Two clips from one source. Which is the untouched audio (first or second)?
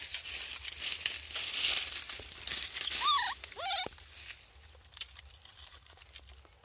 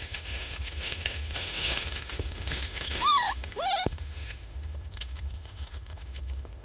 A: first